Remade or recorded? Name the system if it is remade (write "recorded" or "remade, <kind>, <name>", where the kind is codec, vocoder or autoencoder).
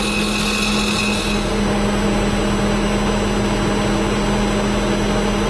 recorded